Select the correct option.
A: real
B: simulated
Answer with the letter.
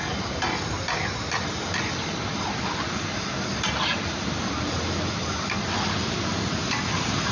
A